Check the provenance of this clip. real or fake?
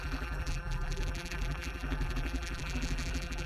fake